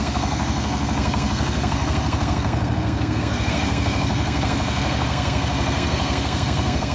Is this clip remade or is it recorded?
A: remade